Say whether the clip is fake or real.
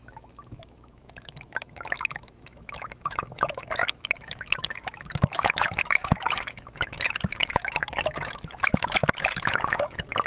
fake